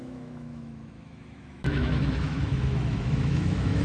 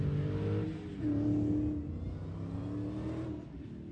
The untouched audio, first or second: second